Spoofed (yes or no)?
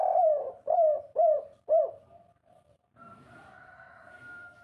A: yes